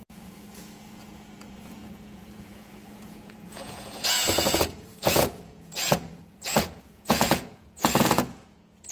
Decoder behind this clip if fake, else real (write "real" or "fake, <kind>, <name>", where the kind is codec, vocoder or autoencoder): fake, vocoder, Vocos